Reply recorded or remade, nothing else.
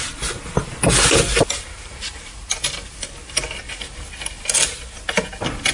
recorded